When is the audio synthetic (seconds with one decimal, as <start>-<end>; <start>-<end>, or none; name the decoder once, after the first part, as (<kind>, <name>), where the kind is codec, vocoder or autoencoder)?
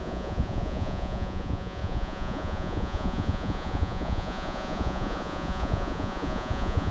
0.0-6.9 (vocoder, Vocos)